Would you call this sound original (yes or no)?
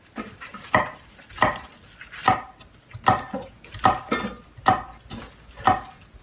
yes